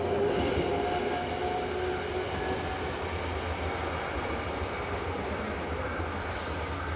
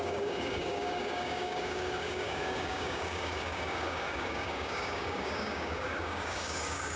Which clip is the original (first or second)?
first